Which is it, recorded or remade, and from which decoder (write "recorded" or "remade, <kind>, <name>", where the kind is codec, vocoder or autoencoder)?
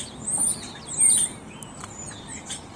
recorded